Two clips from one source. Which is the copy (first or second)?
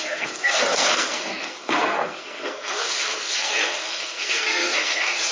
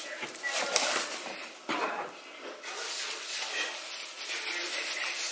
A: first